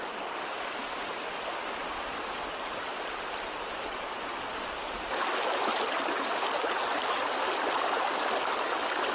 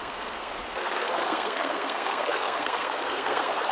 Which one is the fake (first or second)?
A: second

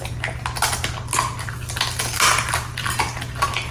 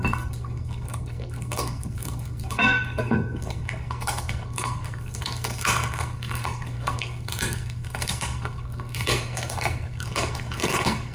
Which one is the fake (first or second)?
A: second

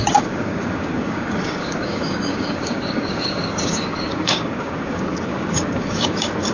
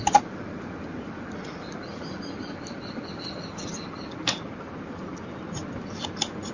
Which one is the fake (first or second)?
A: first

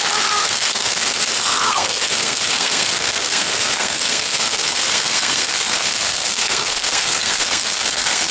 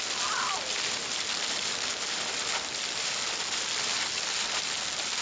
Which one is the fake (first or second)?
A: first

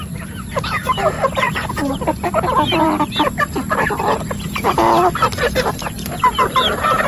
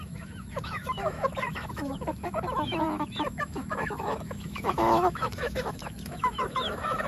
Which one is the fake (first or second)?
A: second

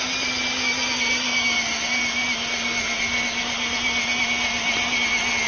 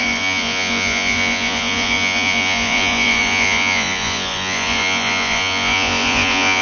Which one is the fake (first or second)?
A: second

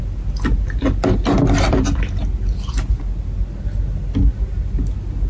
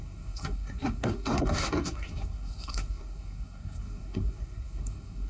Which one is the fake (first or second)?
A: second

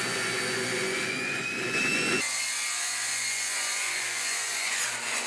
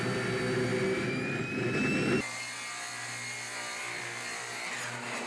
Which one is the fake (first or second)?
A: first